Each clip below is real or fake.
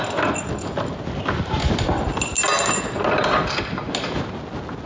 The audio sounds real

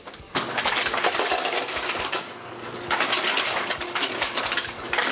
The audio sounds fake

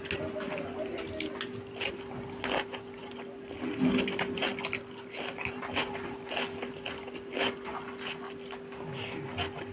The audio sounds real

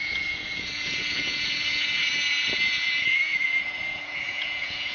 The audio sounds fake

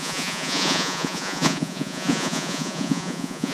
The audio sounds fake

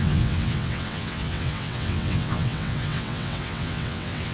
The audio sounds fake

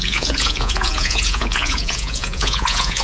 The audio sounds fake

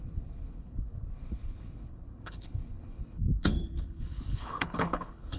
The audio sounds fake